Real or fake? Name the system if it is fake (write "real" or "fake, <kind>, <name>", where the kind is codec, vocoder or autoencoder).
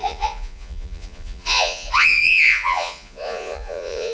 fake, vocoder, Vocos